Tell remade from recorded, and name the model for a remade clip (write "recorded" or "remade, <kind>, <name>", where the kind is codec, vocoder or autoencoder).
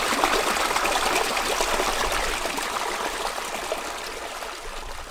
recorded